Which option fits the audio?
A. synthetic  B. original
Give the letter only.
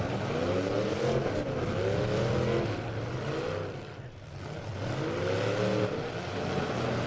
B